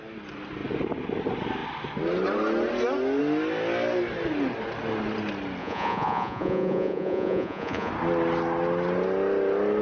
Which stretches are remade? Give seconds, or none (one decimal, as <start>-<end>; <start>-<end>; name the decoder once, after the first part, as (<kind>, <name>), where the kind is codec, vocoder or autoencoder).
5.6-7.9 (vocoder, Vocos)